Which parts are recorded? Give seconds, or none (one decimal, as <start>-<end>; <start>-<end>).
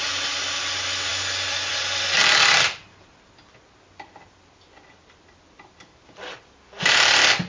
0.0-7.5